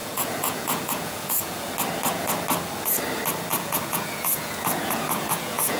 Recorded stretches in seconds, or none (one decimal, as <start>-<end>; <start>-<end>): 1.7-3.5